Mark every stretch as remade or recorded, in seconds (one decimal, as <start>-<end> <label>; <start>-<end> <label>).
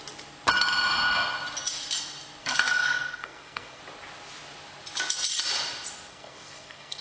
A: 0.0-2.4 recorded; 2.4-3.8 remade; 3.8-6.1 recorded; 6.1-7.0 remade